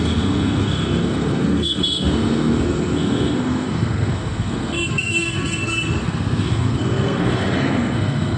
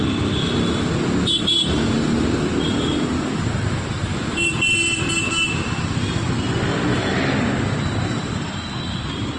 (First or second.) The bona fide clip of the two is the second